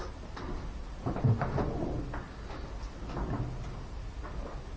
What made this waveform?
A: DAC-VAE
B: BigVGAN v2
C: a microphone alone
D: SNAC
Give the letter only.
C